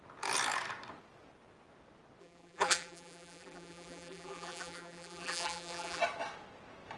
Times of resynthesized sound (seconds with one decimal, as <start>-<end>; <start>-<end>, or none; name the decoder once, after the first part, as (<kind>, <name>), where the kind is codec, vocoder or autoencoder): 2.2-6.0 (vocoder, BigVGAN v2)